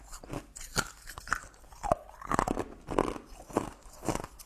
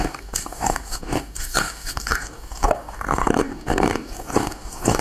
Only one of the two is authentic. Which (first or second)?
first